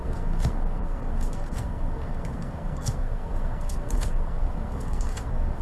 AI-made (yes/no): yes